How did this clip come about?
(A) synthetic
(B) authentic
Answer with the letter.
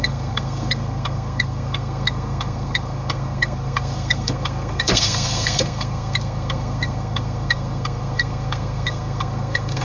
A